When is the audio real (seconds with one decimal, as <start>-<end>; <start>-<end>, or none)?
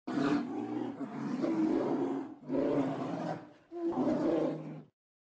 0.0-5.3